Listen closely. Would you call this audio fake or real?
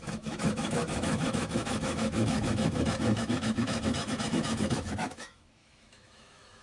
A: fake